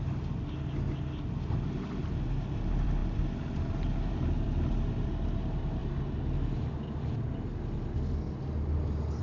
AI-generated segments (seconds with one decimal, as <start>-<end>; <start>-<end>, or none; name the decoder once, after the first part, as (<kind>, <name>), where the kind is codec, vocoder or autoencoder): none